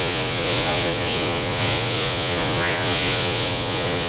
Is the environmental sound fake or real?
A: fake